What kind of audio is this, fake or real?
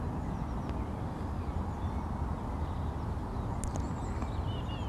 real